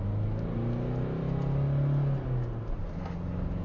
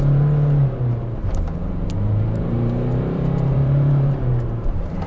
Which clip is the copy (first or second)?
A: second